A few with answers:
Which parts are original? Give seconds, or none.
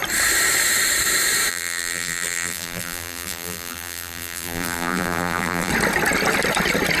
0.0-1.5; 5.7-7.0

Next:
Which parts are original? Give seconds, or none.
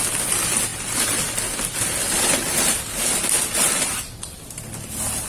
0.0-5.3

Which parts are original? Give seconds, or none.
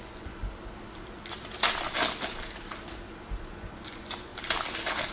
0.4-3.4; 4.3-5.1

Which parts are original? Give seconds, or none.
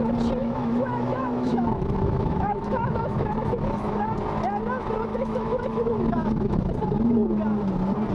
0.0-0.4; 4.1-5.1; 6.7-8.1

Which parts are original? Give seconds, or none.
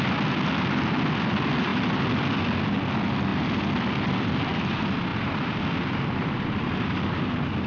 0.0-5.1